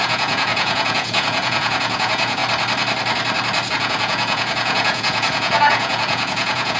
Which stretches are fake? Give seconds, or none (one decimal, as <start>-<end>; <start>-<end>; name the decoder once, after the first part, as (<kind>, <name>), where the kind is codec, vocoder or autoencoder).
0.0-2.4 (vocoder, Vocos); 3.7-6.8